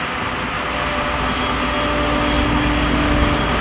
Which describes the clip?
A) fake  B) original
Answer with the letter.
B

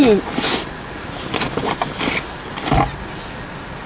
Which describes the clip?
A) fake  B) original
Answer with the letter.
B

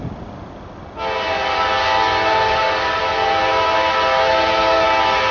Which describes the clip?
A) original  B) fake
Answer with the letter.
A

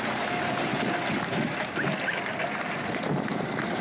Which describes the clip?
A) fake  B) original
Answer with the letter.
B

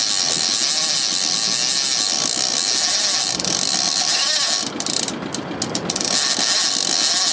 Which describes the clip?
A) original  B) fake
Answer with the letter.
A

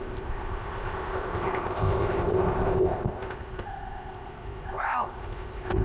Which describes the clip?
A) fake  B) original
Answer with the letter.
A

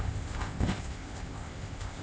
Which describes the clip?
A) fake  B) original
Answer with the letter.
A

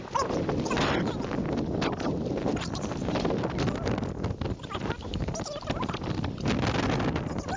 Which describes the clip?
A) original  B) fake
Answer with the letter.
A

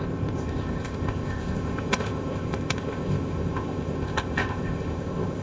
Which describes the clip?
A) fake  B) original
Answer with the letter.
A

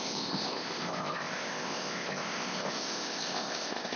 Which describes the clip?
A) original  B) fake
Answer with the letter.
B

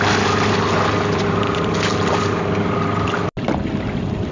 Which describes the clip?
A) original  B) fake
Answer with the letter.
A